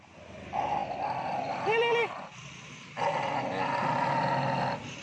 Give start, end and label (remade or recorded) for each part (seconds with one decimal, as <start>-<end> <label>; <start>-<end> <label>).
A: 0.0-0.8 recorded; 0.8-3.8 remade; 3.8-5.0 recorded